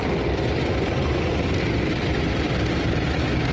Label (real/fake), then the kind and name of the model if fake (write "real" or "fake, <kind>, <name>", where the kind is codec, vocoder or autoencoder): real